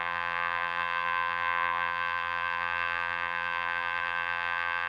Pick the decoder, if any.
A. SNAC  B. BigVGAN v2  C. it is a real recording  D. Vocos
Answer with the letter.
B